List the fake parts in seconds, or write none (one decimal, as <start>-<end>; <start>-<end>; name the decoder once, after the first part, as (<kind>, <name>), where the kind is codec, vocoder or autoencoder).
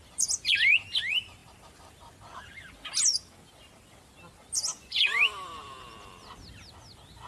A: 4.7-5.2 (vocoder, Vocos)